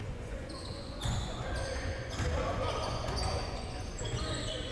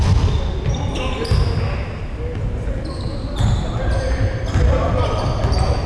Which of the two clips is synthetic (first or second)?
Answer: first